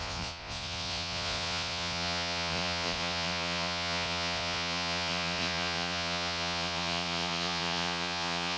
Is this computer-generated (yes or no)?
yes